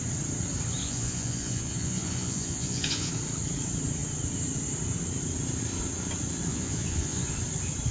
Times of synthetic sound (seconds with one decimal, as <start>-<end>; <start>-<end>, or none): 0.8-3.1; 6.5-7.3